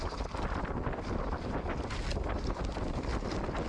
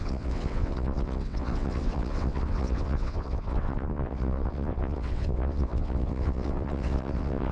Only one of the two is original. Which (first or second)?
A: first